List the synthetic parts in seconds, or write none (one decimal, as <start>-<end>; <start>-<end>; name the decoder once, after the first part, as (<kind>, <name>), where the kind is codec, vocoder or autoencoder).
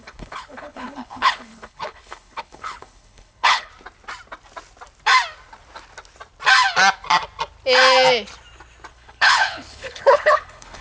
0.0-3.7 (codec, HILCodec); 8.9-10.8